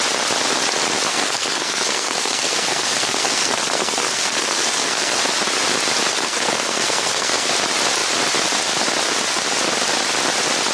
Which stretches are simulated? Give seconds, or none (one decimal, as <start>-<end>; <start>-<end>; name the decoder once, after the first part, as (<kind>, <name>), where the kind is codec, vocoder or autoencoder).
1.1-5.2 (codec, SNAC); 6.1-7.5